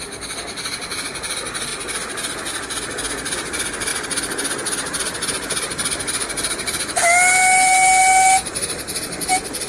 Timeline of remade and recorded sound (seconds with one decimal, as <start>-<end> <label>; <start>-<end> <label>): 0.0-9.7 recorded